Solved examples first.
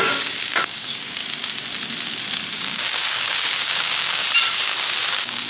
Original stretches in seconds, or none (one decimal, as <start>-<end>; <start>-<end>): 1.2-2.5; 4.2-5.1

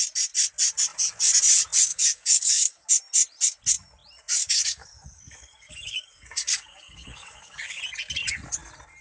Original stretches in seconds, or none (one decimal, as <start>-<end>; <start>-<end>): 0.0-1.9; 2.9-4.4; 7.8-9.0

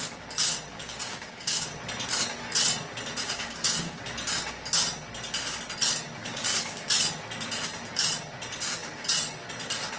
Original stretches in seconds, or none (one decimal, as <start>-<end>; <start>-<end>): 0.0-0.7; 1.7-3.2; 4.0-6.2; 6.9-10.0

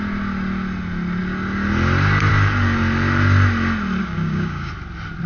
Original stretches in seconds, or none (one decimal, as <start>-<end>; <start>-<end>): 0.0-4.0; 4.7-5.3

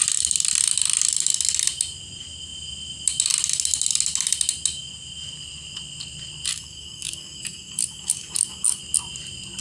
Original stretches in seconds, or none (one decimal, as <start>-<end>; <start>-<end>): 0.0-6.5; 8.8-9.6